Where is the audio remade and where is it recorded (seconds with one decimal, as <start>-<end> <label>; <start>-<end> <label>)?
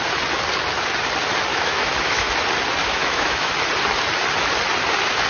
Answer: 0.0-1.5 recorded; 1.5-2.3 remade; 2.3-2.8 recorded; 2.8-3.5 remade; 3.5-5.3 recorded